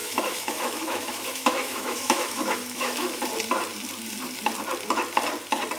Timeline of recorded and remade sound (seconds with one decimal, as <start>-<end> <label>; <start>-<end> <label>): 0.0-3.2 remade; 3.2-5.8 recorded